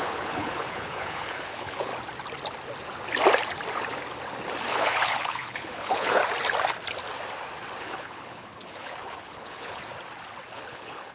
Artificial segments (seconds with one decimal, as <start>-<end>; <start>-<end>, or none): 0.0-1.9; 4.7-6.2; 7.8-9.9; 10.5-11.1